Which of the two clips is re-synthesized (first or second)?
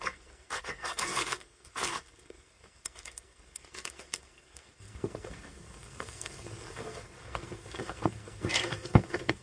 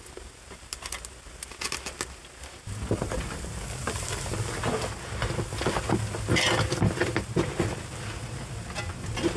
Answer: first